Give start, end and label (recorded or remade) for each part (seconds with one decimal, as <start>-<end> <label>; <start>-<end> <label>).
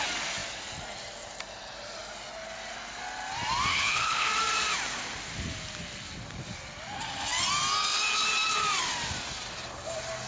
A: 0.0-3.7 recorded; 3.7-4.3 remade; 4.3-10.3 recorded